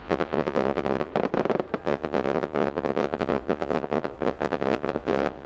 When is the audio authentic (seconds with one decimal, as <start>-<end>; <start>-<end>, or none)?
1.1-1.8